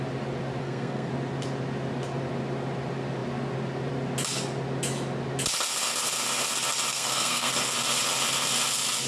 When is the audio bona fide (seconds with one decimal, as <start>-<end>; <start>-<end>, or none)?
0.0-0.6; 1.1-6.9; 7.5-9.1